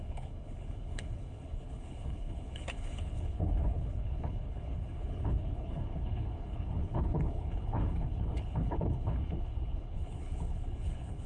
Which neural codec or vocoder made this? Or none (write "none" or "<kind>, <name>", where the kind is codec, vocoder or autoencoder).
codec, HILCodec